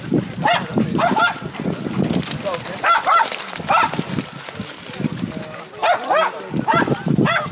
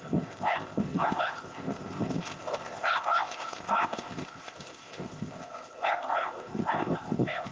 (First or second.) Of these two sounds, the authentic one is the first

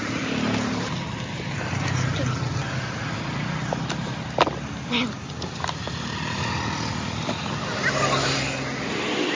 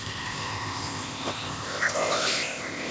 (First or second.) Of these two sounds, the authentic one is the first